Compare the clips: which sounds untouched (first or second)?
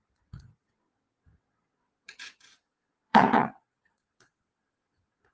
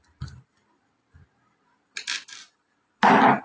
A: second